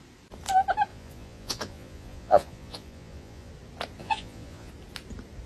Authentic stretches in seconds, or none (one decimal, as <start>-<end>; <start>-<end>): 0.0-0.9; 3.5-4.0; 4.7-5.5